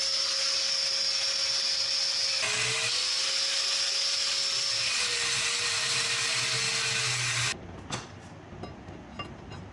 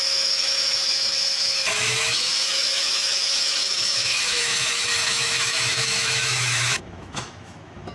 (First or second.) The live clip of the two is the first